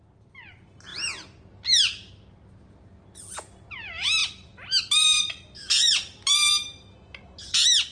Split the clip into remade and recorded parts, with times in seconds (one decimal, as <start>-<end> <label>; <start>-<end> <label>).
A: 0.0-7.9 recorded